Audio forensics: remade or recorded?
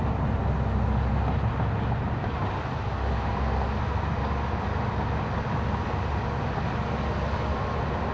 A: recorded